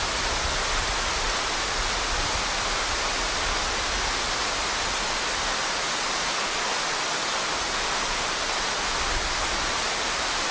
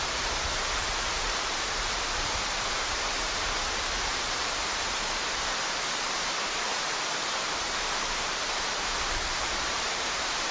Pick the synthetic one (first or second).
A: second